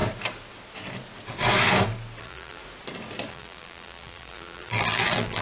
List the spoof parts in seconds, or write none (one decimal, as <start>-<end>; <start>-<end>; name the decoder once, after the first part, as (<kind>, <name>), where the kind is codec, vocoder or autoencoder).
2.2-2.6 (vocoder, BigVGAN v2); 3.3-5.4